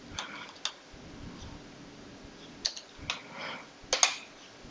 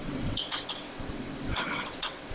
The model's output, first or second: second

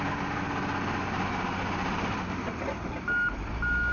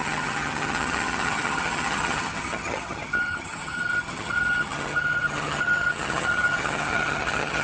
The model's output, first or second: second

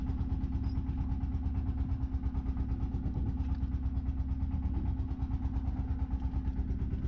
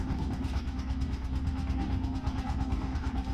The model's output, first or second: second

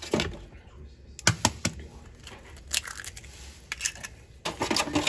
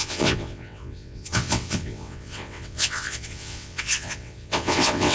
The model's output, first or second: second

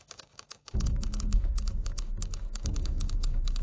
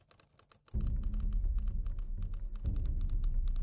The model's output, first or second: first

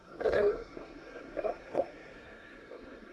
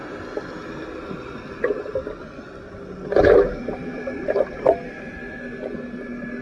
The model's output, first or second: first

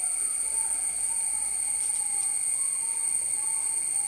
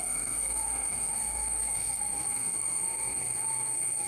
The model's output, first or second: second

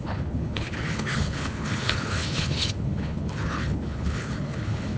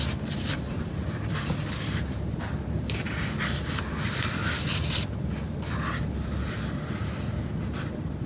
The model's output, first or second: first